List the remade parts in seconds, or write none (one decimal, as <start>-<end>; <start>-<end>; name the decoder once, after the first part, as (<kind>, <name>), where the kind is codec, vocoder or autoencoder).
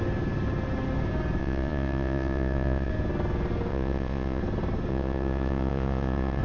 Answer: 1.4-2.9 (vocoder, Vocos); 3.7-4.4; 4.9-6.4